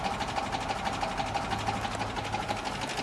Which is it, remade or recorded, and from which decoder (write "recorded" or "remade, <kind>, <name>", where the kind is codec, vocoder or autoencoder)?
recorded